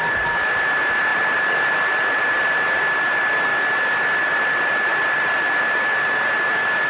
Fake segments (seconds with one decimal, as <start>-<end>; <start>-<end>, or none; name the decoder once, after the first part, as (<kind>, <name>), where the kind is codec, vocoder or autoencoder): 1.1-2.2 (vocoder, BigVGAN v2); 4.9-5.6